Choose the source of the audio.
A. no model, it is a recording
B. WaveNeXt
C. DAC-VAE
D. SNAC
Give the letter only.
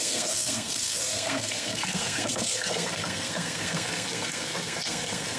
D